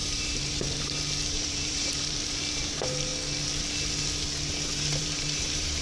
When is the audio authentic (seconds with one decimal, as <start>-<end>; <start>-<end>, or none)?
3.1-5.0